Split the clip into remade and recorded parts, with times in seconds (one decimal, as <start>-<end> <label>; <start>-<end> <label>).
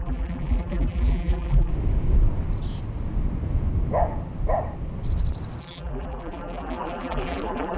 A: 0.0-1.7 remade; 1.7-5.6 recorded; 5.6-7.8 remade